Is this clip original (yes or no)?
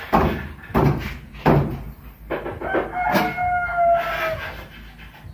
yes